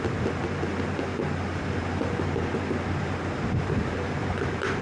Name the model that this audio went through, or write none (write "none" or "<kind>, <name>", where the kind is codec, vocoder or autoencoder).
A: none